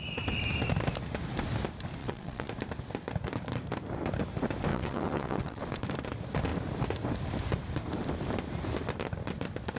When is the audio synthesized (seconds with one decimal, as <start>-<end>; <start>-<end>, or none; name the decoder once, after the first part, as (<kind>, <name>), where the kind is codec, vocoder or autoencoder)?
2.0-2.5 (vocoder, WaveNeXt); 4.7-5.6